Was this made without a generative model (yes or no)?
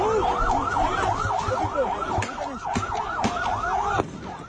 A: yes